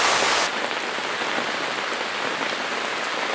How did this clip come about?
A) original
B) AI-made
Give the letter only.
A